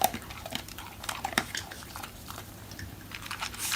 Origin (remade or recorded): remade